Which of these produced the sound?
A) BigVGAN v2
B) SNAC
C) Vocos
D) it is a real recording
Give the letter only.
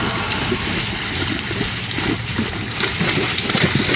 D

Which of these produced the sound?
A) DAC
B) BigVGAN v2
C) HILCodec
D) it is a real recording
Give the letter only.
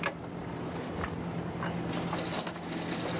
D